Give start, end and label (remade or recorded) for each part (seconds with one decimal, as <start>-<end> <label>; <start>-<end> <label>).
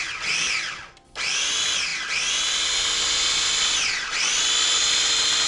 0.0-5.5 recorded